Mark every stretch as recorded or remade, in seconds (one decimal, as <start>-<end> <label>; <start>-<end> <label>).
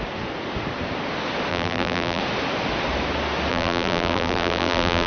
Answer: 0.0-1.5 recorded; 1.5-2.2 remade; 2.2-3.5 recorded; 3.5-5.1 remade